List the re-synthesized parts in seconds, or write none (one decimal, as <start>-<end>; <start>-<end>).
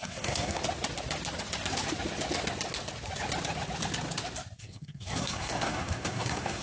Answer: 0.0-0.6; 4.6-6.6